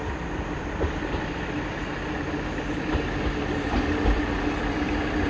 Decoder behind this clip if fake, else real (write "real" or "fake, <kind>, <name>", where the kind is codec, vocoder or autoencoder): real